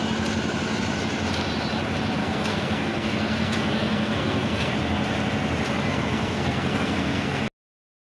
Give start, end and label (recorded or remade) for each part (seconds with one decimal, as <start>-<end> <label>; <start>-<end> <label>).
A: 0.0-2.2 recorded; 2.2-4.7 remade; 4.7-5.9 recorded; 5.9-7.4 remade; 7.4-8.0 recorded